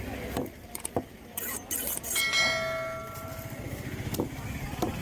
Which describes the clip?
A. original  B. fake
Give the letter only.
A